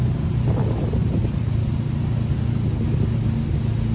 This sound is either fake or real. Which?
real